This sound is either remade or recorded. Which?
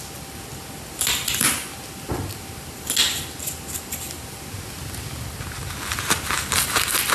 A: recorded